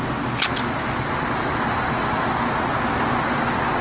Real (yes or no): yes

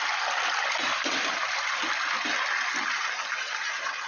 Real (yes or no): yes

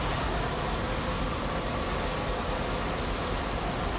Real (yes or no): yes